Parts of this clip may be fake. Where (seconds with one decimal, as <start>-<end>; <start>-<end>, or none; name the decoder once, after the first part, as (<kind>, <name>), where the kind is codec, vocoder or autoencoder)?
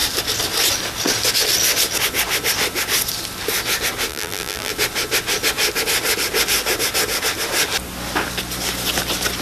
4.1-4.7 (vocoder, BigVGAN v2)